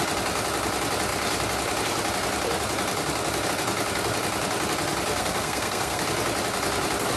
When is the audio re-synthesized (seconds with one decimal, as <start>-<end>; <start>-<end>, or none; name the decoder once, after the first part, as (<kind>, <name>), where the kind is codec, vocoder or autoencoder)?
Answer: 5.1-6.0 (codec, SNAC)